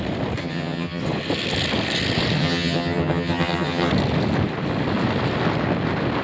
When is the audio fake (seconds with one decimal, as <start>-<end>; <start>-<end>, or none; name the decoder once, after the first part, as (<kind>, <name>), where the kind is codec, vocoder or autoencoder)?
0.4-1.0 (vocoder, HiFi-GAN); 2.4-3.9